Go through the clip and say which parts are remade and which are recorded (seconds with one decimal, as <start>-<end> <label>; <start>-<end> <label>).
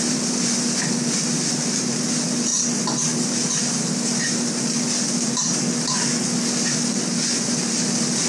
0.0-2.5 remade; 2.5-7.5 recorded; 7.5-8.3 remade